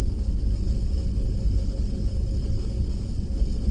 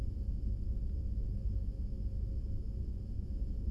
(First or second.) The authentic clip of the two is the second